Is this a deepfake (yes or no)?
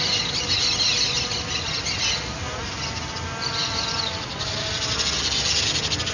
no